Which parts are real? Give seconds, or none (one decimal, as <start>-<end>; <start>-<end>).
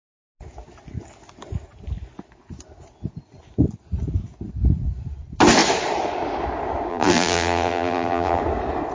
0.0-6.9; 8.4-8.9